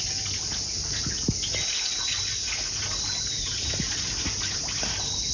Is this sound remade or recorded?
recorded